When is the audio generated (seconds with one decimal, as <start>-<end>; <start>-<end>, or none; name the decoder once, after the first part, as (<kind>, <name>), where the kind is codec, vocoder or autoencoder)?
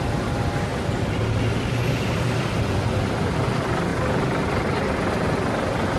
none